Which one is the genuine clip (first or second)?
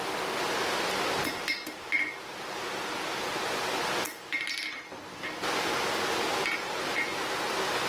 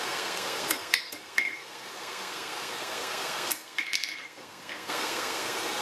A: first